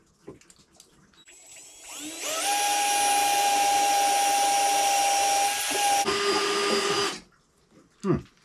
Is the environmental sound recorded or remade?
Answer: recorded